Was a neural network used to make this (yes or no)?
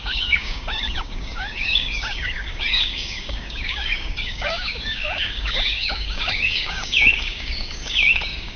yes